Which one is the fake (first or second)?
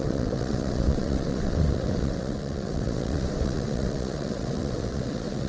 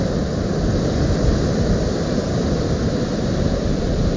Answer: first